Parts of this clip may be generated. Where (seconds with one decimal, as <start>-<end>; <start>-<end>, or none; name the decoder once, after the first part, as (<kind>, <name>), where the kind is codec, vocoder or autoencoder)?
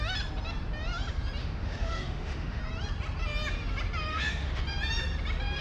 1.4-2.6 (autoencoder, DAC-VAE); 4.1-4.6